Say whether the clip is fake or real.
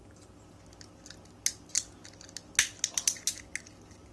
real